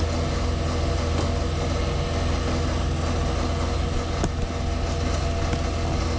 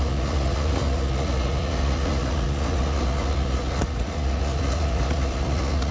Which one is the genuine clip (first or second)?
first